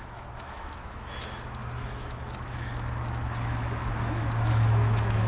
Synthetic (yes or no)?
yes